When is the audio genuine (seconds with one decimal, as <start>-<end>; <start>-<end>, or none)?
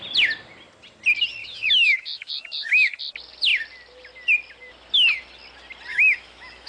0.0-1.4; 3.0-5.9